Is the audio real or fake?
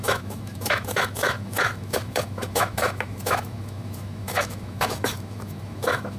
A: fake